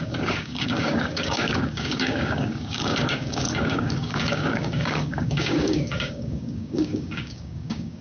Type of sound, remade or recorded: remade